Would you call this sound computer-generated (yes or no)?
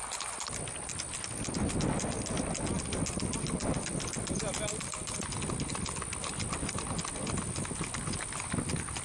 no